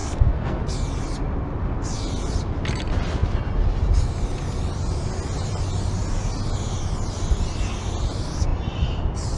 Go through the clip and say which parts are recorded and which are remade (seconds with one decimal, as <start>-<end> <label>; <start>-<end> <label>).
0.0-0.6 remade; 0.6-9.4 recorded